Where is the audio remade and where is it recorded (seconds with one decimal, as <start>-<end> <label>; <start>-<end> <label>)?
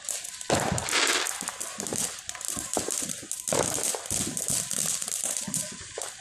0.0-6.2 recorded